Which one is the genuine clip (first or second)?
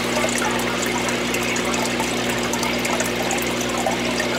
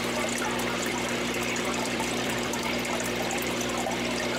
first